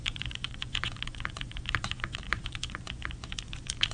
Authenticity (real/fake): fake